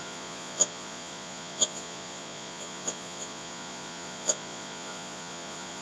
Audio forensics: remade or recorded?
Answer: remade